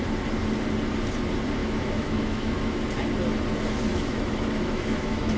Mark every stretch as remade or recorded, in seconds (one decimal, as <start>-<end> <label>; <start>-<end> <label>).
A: 0.0-1.6 recorded; 1.6-2.8 remade; 2.8-3.9 recorded; 3.9-5.4 remade